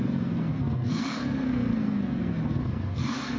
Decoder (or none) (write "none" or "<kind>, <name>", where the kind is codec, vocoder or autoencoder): codec, SNAC